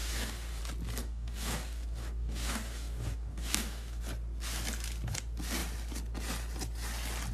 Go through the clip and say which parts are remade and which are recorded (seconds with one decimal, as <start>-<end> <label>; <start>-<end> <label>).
0.0-0.6 remade; 0.6-1.0 recorded; 1.0-4.0 remade; 4.0-7.3 recorded